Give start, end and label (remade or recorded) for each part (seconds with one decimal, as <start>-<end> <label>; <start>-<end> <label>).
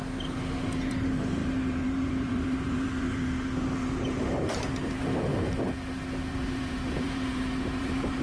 0.0-0.9 recorded; 0.9-5.3 remade; 5.3-6.3 recorded; 6.3-8.2 remade